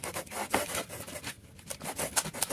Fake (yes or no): no